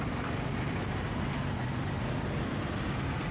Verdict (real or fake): real